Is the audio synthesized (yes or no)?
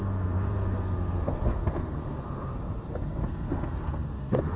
yes